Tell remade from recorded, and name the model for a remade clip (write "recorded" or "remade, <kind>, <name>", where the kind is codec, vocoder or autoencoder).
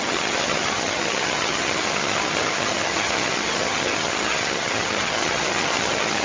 remade, vocoder, HiFi-GAN